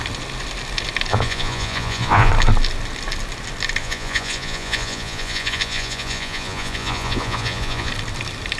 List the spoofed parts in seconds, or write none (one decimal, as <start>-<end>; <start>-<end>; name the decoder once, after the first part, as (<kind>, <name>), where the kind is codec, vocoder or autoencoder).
1.1-2.3 (vocoder, Vocos); 3.8-7.9